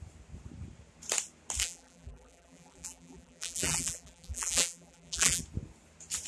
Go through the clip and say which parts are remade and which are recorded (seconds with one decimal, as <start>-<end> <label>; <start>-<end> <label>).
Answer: 0.0-1.6 recorded; 1.6-5.4 remade; 5.4-6.3 recorded